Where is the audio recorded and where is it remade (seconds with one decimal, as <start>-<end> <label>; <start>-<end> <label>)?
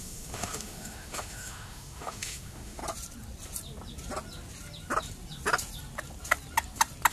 0.0-2.8 remade; 2.8-7.1 recorded